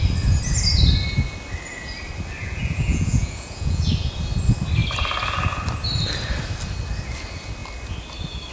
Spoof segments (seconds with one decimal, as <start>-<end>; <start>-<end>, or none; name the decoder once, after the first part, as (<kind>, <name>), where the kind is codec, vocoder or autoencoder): 2.4-3.9 (vocoder, Vocos)